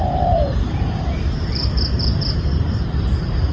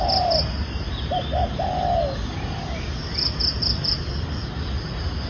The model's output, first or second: first